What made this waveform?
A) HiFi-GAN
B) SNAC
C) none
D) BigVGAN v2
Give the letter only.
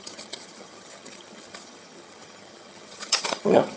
A